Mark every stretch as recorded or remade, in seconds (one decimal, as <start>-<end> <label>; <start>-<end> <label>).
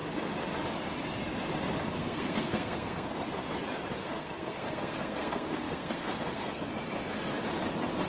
0.0-2.0 recorded; 2.0-3.1 remade; 3.1-4.0 recorded; 4.0-6.7 remade; 6.7-8.1 recorded